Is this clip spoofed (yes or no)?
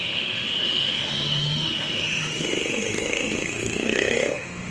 yes